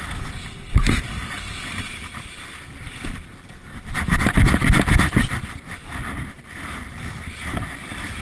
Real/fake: real